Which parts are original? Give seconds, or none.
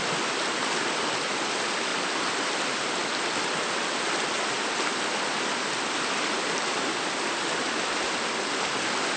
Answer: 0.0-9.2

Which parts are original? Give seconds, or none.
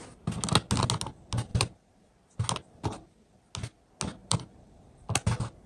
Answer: 0.0-1.5; 2.1-4.2; 5.1-5.7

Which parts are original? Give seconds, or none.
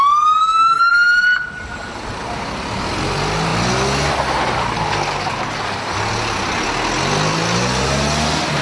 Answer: 0.0-0.4; 0.9-8.6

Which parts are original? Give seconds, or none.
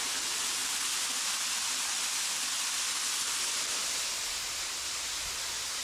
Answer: 0.0-5.8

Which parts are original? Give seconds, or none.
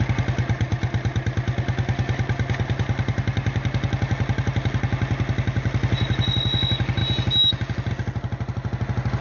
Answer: 0.0-9.2